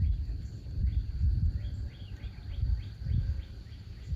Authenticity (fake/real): real